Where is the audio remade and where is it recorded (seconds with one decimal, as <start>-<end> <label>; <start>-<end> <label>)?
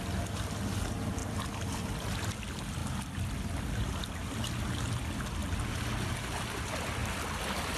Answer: 0.0-1.2 recorded; 1.2-1.9 remade; 1.9-7.8 recorded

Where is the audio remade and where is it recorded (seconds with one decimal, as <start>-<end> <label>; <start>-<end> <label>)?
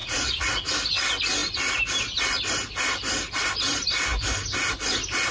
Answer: 0.0-0.5 remade; 0.5-5.3 recorded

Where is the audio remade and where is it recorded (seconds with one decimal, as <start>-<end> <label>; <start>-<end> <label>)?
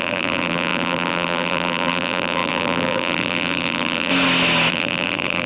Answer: 0.0-4.1 remade; 4.1-4.7 recorded; 4.7-5.5 remade